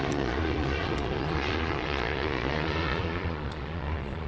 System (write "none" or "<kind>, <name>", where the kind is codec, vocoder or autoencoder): vocoder, Vocos